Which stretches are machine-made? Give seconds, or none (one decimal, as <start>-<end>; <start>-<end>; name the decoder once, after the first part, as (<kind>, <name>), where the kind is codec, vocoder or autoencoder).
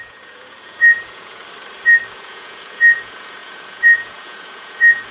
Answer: 0.0-1.4 (vocoder, Vocos); 2.1-5.1